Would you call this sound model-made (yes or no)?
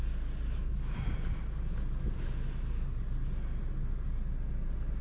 no